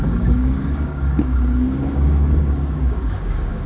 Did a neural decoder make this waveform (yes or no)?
yes